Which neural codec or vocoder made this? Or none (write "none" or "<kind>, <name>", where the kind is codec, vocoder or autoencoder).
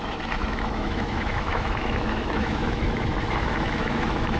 autoencoder, DAC-VAE